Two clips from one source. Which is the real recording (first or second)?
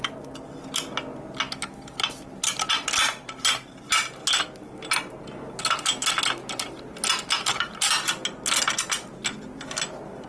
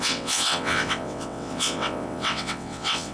first